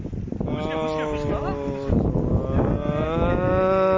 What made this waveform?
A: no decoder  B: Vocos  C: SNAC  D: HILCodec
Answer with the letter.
A